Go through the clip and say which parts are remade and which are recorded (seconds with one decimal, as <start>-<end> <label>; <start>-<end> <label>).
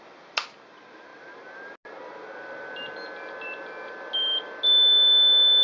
0.0-5.6 recorded